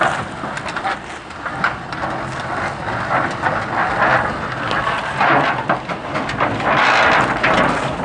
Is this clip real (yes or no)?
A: yes